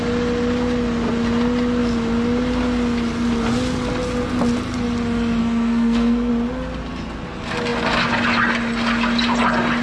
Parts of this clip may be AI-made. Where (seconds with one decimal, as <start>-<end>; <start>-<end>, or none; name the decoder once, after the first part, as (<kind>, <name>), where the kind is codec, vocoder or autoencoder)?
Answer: 5.4-6.3 (codec, SNAC)